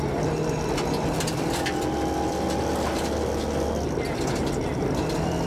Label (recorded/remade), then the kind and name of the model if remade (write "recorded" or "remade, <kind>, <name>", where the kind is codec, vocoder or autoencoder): recorded